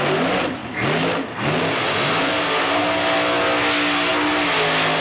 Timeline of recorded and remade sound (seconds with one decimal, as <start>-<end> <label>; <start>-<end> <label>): 0.0-5.0 recorded